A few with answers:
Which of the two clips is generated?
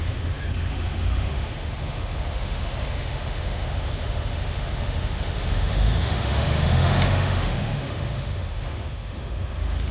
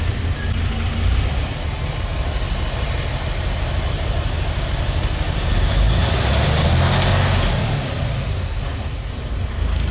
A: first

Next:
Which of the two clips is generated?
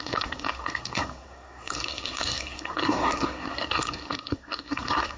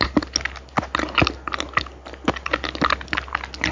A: first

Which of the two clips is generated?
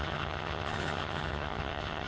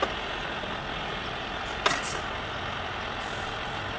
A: first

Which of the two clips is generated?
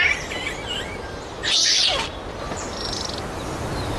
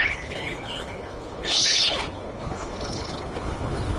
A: second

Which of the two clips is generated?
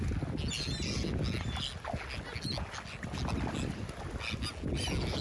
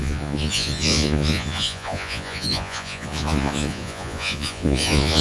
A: second